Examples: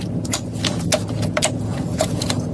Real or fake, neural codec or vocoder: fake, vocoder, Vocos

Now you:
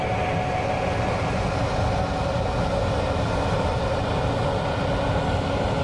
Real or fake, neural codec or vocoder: real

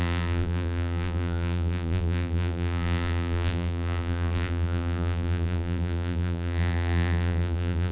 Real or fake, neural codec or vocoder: fake, vocoder, BigVGAN v2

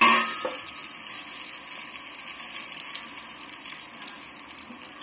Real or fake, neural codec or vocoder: real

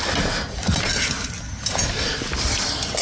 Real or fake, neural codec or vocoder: real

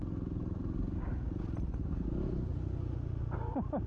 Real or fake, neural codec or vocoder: real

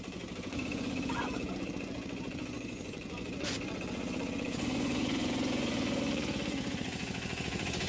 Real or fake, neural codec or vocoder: fake, vocoder, Vocos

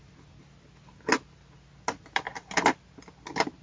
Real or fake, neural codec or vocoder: real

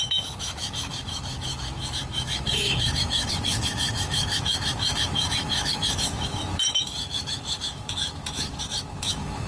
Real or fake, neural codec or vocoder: fake, autoencoder, DAC-VAE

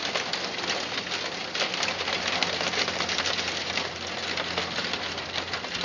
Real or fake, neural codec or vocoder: real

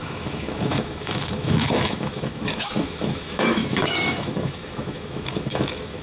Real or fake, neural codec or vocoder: fake, autoencoder, DAC-VAE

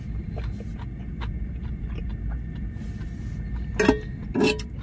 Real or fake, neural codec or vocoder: real